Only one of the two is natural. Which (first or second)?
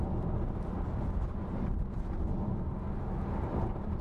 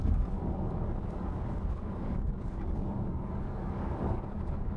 first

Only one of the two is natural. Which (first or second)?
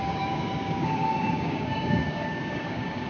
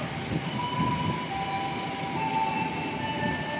second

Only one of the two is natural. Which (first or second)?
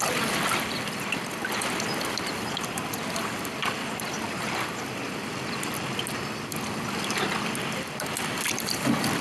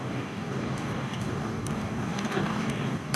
first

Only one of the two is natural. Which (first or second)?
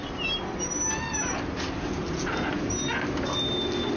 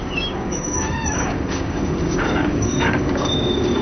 first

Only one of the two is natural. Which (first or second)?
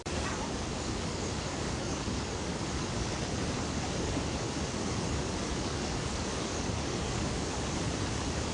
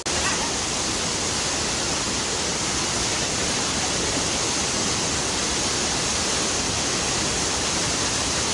second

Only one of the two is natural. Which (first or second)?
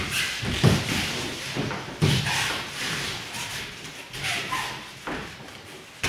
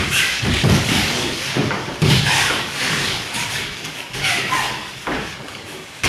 first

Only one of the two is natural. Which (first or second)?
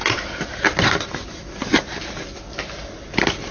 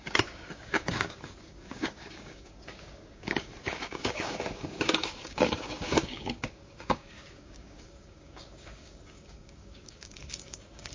first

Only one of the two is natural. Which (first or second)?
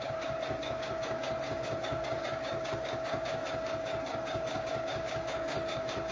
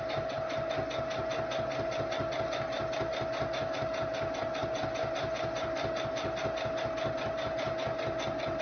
second